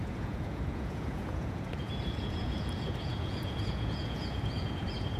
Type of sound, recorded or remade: remade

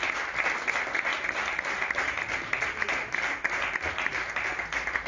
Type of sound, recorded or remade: recorded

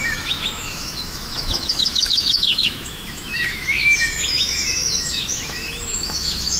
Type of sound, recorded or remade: remade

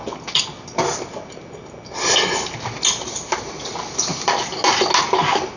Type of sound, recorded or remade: recorded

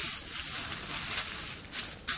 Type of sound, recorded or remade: recorded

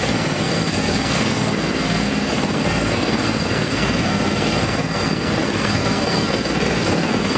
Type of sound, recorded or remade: remade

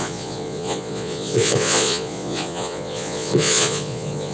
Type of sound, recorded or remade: remade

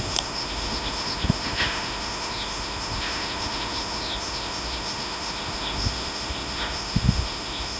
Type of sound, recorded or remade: remade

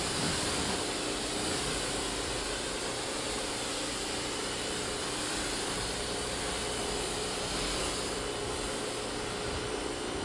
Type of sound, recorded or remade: remade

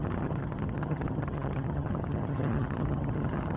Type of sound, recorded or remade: remade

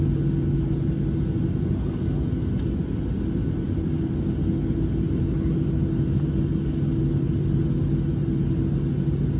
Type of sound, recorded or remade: recorded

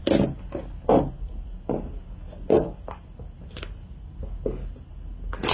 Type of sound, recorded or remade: recorded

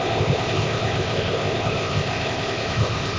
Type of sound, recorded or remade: remade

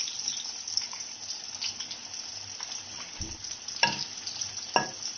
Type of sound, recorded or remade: recorded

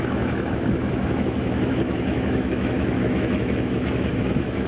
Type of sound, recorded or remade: remade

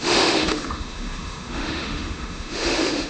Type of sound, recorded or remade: remade